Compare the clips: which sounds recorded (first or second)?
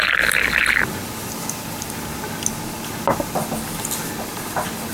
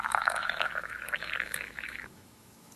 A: first